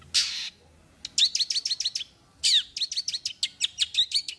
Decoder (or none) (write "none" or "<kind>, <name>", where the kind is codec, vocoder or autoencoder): none